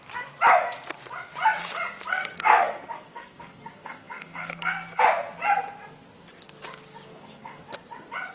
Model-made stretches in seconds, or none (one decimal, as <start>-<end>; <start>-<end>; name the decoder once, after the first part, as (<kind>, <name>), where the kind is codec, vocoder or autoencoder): 2.1-5.0 (codec, SNAC); 7.1-7.6